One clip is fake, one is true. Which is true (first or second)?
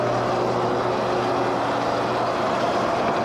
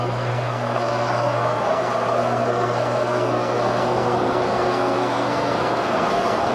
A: first